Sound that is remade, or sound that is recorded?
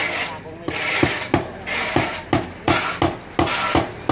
recorded